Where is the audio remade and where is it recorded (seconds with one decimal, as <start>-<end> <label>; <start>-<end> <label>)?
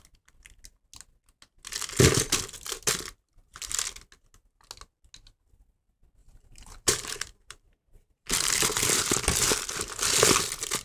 0.0-6.2 recorded; 6.2-9.5 remade; 9.5-10.8 recorded